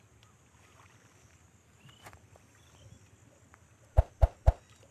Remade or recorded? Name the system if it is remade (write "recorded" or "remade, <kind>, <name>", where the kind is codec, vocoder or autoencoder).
recorded